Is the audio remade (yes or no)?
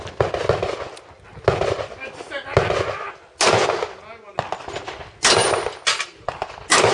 no